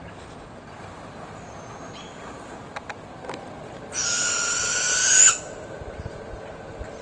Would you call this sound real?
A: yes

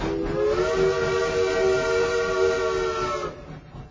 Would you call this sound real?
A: yes